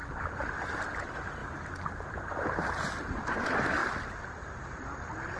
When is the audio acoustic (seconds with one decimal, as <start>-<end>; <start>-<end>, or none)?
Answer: 0.0-5.4